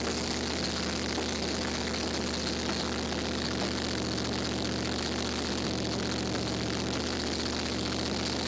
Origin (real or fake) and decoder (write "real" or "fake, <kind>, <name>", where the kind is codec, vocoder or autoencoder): real